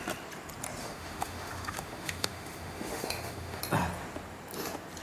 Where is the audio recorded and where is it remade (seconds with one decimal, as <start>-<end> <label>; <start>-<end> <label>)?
0.0-0.8 recorded; 0.8-3.6 remade; 3.6-5.0 recorded